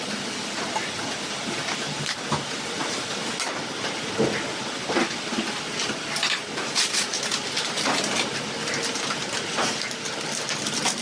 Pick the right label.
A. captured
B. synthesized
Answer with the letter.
A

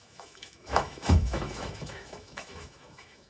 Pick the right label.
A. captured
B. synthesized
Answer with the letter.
B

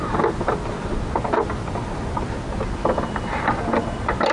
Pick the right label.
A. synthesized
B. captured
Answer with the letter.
B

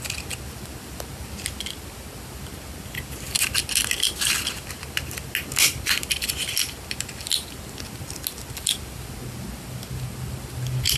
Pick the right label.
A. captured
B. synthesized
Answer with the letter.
A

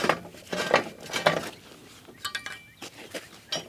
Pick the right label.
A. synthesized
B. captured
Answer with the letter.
B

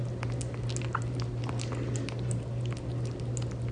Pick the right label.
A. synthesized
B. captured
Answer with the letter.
B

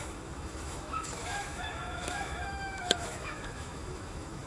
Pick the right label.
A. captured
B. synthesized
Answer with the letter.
B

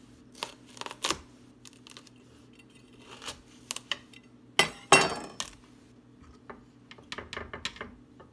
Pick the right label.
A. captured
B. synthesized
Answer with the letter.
A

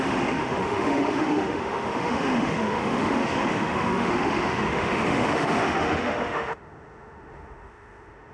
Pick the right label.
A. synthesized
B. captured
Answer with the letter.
A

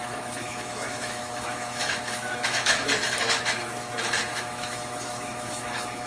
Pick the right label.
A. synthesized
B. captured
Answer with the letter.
A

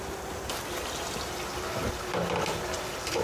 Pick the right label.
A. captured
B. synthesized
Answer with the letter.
A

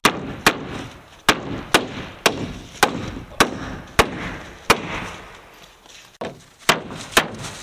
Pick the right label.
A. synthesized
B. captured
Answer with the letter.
B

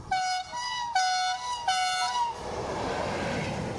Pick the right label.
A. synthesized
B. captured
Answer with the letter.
B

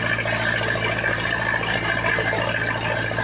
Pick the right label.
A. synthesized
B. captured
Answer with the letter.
B